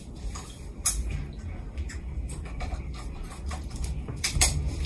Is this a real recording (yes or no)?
no